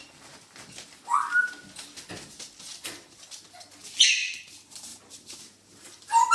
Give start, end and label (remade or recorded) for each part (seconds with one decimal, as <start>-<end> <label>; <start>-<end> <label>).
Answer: 0.0-6.3 recorded